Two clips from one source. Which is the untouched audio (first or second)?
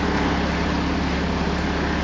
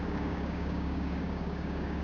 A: first